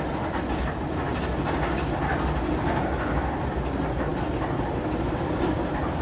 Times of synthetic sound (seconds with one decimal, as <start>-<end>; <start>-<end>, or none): none